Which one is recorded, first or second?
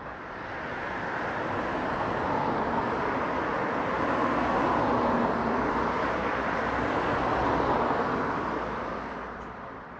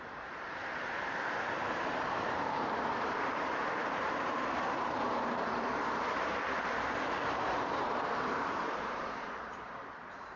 first